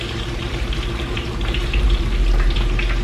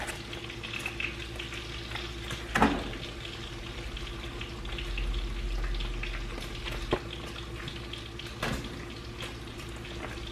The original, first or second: second